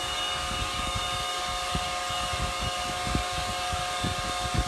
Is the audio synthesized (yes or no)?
yes